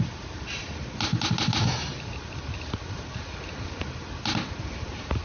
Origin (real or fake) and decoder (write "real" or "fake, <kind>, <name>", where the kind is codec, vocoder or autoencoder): real